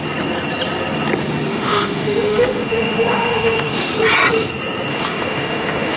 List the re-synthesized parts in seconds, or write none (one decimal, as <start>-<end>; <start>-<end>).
1.5-3.9; 4.9-6.0